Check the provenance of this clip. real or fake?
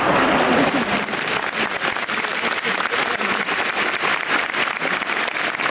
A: real